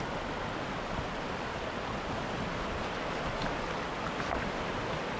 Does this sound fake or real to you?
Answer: real